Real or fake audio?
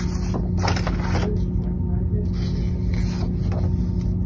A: real